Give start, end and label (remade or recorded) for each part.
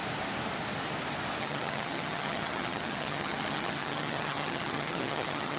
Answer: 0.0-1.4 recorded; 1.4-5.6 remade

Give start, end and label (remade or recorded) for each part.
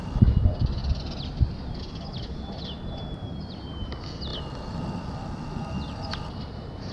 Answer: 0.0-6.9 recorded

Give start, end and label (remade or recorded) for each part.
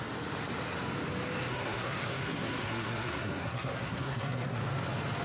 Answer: 0.0-1.5 recorded; 1.5-4.6 remade; 4.6-5.2 recorded